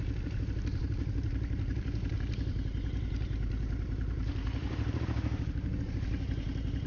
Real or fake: fake